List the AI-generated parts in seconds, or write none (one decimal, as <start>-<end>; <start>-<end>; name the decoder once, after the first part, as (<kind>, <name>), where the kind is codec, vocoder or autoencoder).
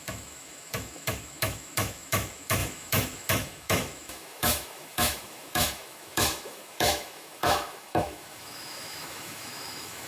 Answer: 0.0-10.1 (autoencoder, DAC-VAE)